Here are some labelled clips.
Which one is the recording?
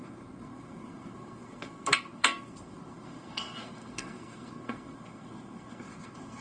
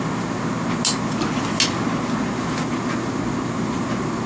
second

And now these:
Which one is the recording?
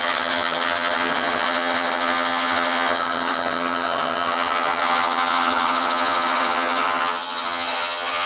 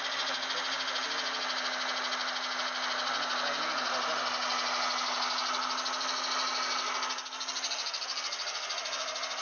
second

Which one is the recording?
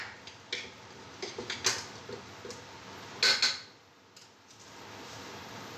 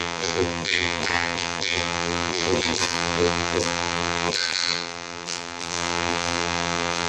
first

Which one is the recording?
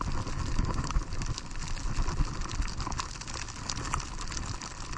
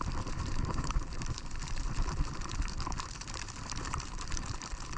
first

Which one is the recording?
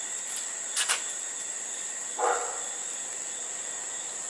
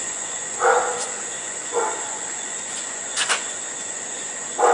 first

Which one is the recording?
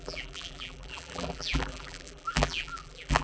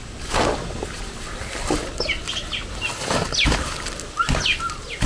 second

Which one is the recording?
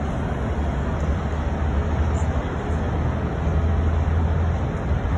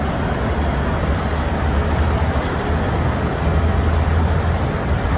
first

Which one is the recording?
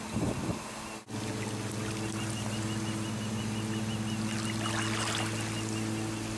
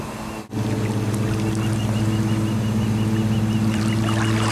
first